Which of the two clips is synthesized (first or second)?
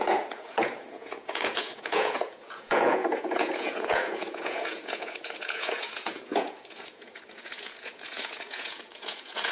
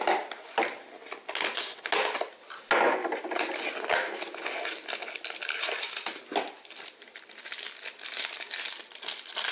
first